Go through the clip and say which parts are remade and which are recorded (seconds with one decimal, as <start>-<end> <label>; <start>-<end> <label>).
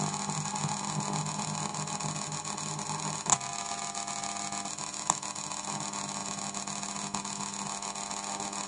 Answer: 0.0-8.7 recorded